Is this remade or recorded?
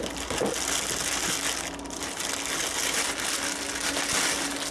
recorded